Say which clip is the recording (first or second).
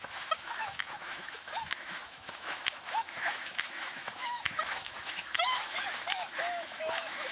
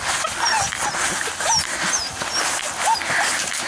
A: second